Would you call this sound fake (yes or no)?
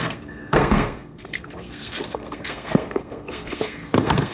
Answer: yes